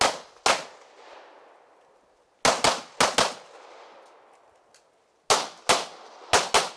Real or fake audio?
real